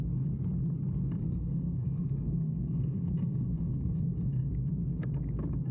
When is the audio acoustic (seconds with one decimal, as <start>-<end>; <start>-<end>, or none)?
0.0-1.2; 4.5-5.7